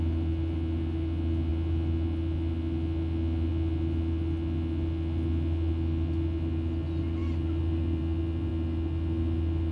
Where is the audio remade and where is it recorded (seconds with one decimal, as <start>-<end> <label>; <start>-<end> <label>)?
0.0-9.7 recorded

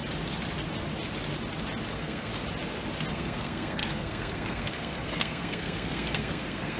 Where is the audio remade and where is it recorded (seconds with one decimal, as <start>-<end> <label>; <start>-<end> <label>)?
0.0-1.9 recorded; 1.9-2.3 remade; 2.3-3.1 recorded; 3.1-6.8 remade

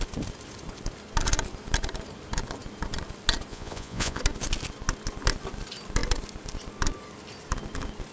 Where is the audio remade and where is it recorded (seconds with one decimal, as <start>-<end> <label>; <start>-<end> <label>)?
0.0-3.5 recorded; 3.5-4.2 remade; 4.2-8.1 recorded

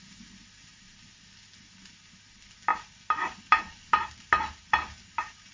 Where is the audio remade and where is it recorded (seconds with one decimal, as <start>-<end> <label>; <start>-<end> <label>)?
0.0-5.5 recorded

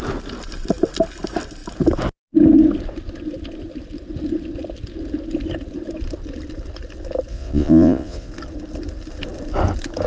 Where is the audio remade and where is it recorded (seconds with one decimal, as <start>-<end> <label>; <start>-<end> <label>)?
0.0-7.3 recorded; 7.3-8.3 remade; 8.3-10.1 recorded

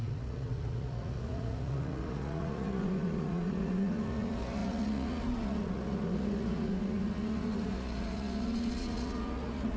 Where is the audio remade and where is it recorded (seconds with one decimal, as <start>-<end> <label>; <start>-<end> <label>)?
0.0-9.8 remade

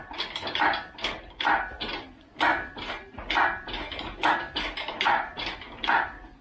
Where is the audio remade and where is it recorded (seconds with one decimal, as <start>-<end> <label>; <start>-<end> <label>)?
0.0-6.4 recorded

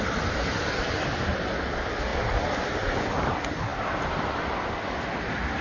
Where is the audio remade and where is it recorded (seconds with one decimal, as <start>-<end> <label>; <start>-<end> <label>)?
0.0-5.6 recorded